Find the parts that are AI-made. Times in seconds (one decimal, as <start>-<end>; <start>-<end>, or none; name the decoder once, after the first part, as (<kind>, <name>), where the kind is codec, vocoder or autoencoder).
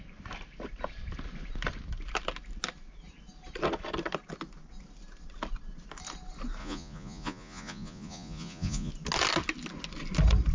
6.6-8.9 (vocoder, Vocos)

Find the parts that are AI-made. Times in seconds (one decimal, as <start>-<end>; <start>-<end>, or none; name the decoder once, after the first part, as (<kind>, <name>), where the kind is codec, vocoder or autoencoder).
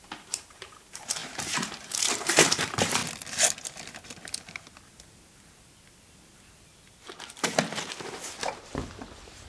0.0-3.0 (vocoder, BigVGAN v2); 8.2-9.5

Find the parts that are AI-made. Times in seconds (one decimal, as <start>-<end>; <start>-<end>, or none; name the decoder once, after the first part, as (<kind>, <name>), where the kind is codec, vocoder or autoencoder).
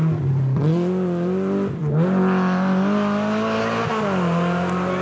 none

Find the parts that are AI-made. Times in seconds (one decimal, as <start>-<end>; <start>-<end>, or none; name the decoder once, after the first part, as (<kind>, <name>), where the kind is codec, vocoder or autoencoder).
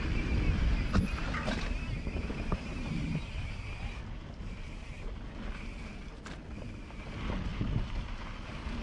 none